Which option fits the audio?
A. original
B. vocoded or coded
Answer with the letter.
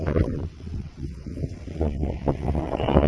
B